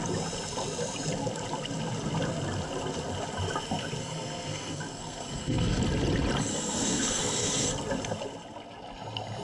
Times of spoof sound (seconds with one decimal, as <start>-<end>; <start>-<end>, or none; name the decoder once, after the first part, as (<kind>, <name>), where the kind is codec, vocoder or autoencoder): 4.0-5.8 (codec, SNAC); 6.5-7.7